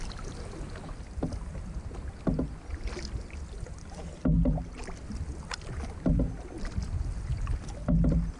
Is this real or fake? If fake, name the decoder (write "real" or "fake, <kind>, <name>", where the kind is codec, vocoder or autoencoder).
real